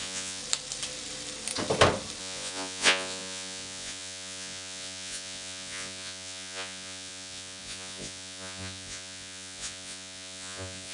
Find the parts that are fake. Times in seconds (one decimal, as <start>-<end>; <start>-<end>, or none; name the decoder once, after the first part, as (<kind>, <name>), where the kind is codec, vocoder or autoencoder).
0.0-0.4 (vocoder, Vocos); 2.2-10.9